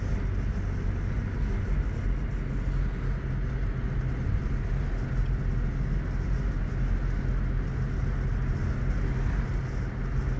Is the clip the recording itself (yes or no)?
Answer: yes